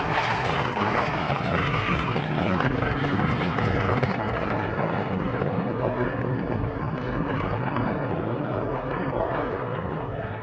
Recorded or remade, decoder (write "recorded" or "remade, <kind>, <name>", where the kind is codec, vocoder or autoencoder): remade, codec, SNAC